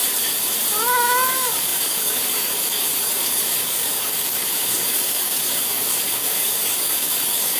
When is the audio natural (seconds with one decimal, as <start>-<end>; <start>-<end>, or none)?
0.0-0.8